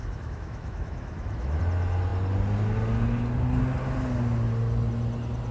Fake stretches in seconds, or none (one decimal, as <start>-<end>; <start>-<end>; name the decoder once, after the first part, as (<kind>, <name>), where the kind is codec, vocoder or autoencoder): 0.0-1.6 (autoencoder, DAC-VAE)